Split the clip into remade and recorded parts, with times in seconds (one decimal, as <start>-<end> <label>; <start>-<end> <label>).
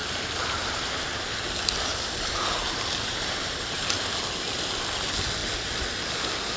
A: 0.0-1.0 remade; 1.0-1.9 recorded; 1.9-4.0 remade; 4.0-6.6 recorded